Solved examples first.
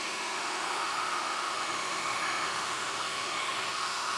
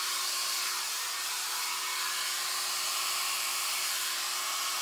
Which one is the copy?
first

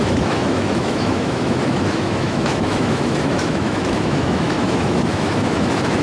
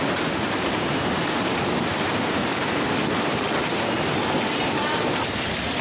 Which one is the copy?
first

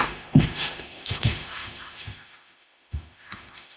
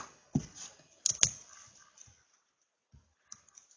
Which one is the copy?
first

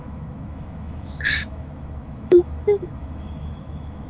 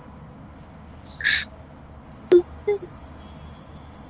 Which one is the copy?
first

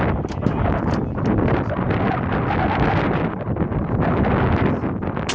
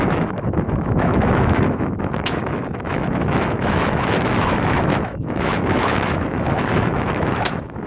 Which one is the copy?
second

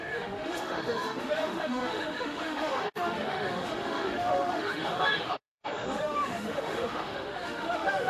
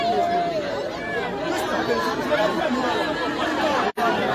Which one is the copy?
first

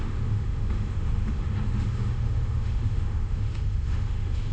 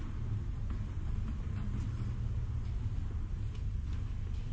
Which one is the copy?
first